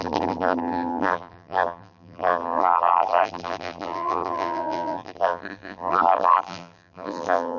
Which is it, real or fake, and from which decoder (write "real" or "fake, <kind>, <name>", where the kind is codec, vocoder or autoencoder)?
fake, vocoder, BigVGAN v2